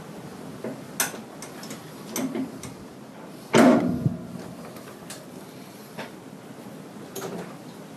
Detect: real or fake real